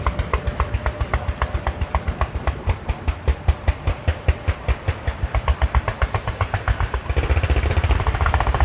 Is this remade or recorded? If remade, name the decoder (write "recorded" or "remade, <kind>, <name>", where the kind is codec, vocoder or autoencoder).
recorded